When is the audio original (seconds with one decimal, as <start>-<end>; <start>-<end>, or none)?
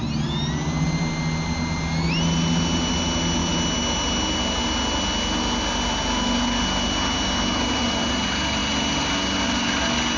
0.0-10.2